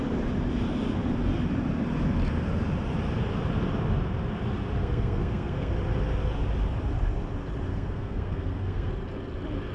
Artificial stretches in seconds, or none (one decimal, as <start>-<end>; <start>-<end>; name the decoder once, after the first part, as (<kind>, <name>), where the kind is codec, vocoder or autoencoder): 4.8-5.7 (codec, SNAC); 7.7-8.9